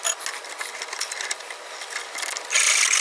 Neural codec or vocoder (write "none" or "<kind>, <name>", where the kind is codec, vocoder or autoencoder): none